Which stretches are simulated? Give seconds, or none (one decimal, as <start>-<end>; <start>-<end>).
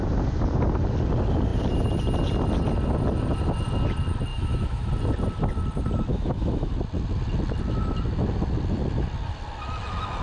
4.3-4.9; 6.1-6.7